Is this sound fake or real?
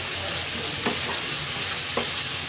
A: real